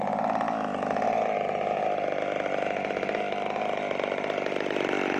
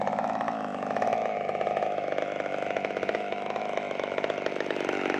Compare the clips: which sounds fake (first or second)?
second